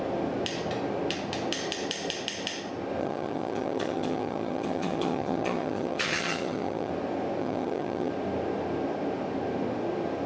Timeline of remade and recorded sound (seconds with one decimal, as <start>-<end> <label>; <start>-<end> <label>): 0.0-3.0 recorded; 3.0-6.9 remade; 6.9-7.4 recorded; 7.4-8.1 remade; 8.1-10.3 recorded